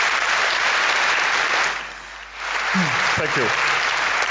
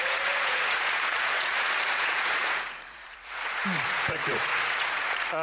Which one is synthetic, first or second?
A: second